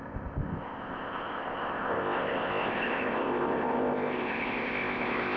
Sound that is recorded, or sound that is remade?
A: remade